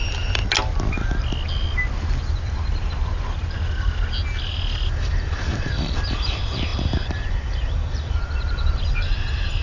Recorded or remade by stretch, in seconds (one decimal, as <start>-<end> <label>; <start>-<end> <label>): 0.0-0.4 remade; 0.4-4.9 recorded; 4.9-9.6 remade